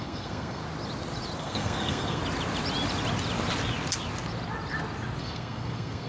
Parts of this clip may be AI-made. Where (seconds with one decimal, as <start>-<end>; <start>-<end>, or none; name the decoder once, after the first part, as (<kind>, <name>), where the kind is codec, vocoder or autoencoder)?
0.0-0.6 (codec, SNAC); 1.4-2.2; 5.2-6.1